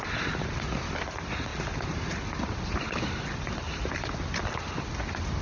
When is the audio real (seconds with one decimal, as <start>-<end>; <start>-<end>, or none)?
0.0-5.4